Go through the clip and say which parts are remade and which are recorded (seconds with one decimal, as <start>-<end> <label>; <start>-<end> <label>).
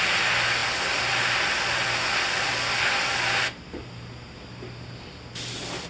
0.0-5.9 recorded